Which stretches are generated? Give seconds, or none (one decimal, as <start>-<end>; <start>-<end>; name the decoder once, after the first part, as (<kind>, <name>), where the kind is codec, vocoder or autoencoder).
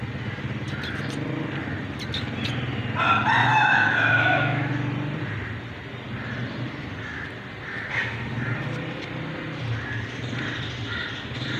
3.4-4.7 (autoencoder, DAC-VAE)